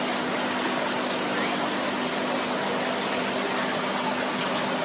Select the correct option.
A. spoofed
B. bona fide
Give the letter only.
B